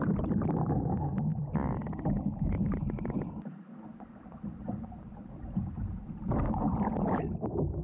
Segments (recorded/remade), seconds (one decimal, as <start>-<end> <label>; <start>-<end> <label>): 0.0-1.3 remade; 1.3-3.5 recorded; 3.5-7.8 remade